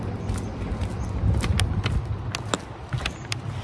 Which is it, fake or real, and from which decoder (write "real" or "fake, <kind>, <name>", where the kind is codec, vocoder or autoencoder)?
real